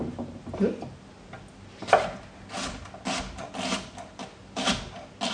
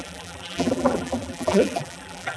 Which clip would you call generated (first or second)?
second